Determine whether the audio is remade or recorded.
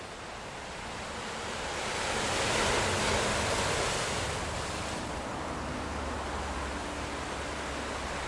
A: recorded